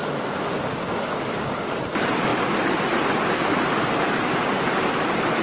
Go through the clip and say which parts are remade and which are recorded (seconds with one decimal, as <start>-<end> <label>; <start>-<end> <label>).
0.0-0.6 recorded; 0.6-1.8 remade; 1.8-5.4 recorded